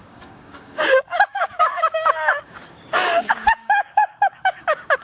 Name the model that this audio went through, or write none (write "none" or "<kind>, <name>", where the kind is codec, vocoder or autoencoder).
codec, DAC